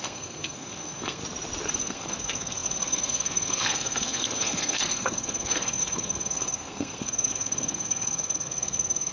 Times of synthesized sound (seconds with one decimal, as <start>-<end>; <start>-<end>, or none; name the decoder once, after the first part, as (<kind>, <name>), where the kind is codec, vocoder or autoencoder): 0.0-1.2 (codec, SNAC); 1.8-9.1